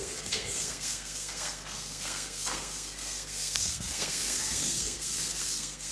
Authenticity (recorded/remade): remade